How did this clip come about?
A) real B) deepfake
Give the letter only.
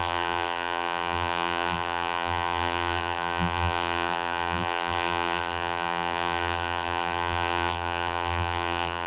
B